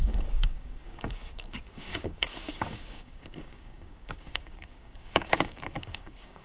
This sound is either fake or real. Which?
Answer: fake